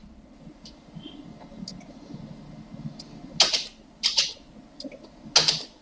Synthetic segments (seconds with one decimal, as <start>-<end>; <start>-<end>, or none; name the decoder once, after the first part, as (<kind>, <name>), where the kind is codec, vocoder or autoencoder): none